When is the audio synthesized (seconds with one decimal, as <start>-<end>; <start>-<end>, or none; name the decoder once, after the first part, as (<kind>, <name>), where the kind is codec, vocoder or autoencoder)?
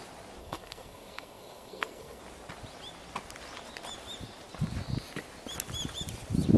0.4-2.2 (codec, SNAC)